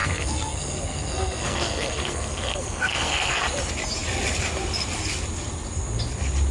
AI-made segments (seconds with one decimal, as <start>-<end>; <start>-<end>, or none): 0.0-3.4